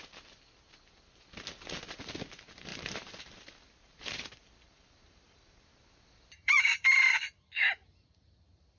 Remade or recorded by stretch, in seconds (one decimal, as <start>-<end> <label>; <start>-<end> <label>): 0.0-2.7 recorded; 2.7-7.1 remade; 7.1-8.8 recorded